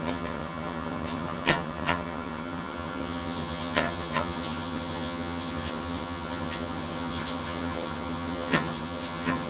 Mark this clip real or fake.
fake